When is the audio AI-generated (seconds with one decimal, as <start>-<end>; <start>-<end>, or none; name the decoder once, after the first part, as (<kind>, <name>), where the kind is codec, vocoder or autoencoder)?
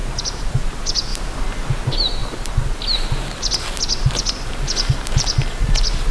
0.0-0.5 (vocoder, BigVGAN v2)